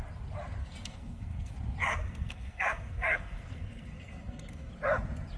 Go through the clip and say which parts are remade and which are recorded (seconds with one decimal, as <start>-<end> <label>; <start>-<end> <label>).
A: 0.0-0.6 recorded; 0.6-1.5 remade; 1.5-1.9 recorded; 1.9-4.7 remade; 4.7-5.4 recorded